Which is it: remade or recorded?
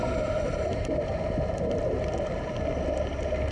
recorded